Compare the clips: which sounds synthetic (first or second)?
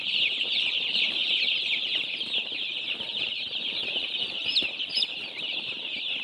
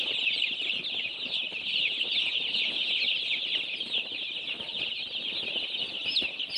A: first